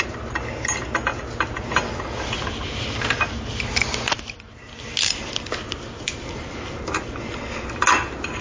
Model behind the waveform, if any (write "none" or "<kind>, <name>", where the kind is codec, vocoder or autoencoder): none